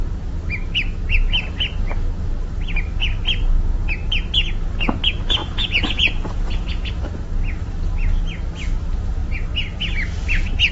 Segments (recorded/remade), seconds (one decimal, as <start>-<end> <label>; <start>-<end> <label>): 0.0-5.4 recorded; 5.4-6.9 remade; 6.9-10.7 recorded